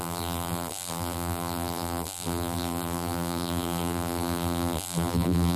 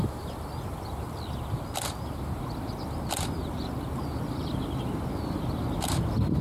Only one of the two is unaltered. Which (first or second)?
second